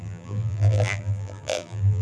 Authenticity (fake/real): fake